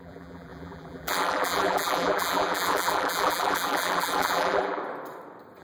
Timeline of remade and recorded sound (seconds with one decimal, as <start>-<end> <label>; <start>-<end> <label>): 0.0-4.8 remade; 4.8-5.6 recorded